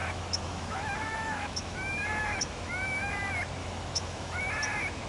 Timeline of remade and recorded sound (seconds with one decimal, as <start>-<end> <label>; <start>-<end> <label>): 0.0-3.1 remade; 3.1-3.6 recorded; 3.6-4.4 remade; 4.4-5.1 recorded